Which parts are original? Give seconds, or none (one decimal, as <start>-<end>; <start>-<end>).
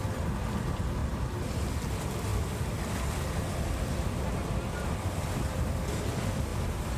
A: 0.0-1.0; 1.6-6.5